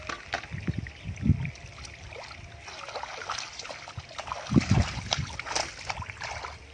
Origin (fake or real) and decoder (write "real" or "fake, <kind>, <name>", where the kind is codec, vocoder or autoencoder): real